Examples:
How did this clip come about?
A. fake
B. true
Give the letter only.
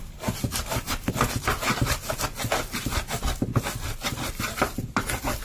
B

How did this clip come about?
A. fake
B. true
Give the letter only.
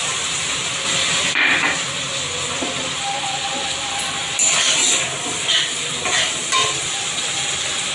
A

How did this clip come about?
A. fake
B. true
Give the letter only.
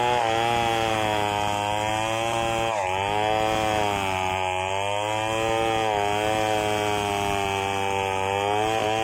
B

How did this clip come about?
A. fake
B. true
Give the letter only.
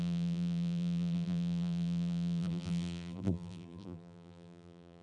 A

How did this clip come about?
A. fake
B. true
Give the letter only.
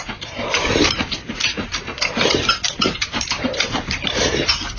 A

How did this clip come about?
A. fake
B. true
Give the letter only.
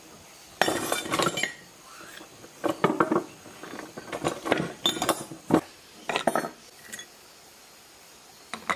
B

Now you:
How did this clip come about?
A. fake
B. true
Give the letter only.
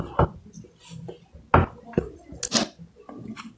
B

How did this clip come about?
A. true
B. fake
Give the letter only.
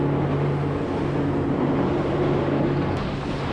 A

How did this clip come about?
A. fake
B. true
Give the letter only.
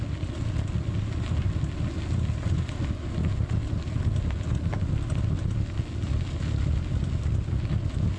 B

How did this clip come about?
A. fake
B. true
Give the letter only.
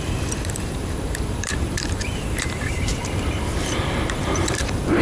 A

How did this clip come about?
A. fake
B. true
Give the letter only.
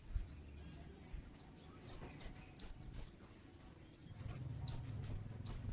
A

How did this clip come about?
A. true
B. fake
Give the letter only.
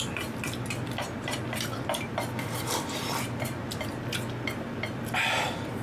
B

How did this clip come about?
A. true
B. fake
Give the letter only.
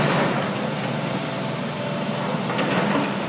A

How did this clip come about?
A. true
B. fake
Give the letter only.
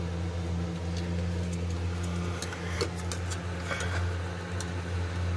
A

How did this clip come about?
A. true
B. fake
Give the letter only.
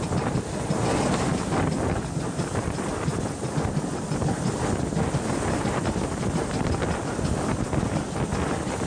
A